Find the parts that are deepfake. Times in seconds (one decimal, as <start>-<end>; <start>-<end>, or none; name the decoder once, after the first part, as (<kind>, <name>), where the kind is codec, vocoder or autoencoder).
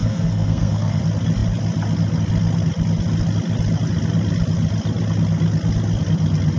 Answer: 0.0-1.0 (codec, SNAC)